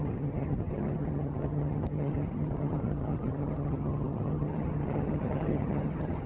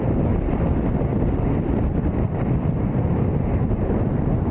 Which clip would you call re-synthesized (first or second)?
first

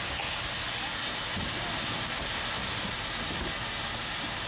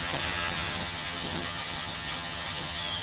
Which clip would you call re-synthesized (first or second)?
second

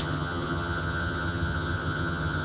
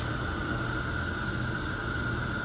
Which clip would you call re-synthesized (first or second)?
first